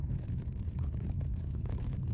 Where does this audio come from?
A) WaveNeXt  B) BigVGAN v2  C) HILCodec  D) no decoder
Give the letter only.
C